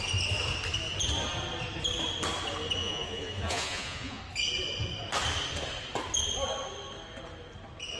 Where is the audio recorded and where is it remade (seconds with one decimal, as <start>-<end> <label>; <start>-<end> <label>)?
0.0-2.8 recorded; 2.8-4.2 remade; 4.2-8.0 recorded